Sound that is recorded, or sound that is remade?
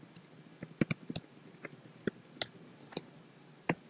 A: recorded